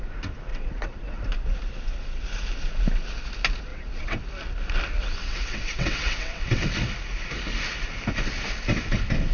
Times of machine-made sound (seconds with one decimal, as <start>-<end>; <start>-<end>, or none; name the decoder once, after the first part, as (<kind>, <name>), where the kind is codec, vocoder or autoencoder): 0.5-1.2 (vocoder, WaveNeXt); 3.7-4.2; 5.2-6.7